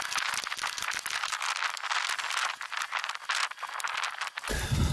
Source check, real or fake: real